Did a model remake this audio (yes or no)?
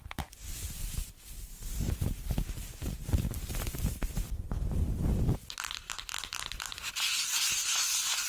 no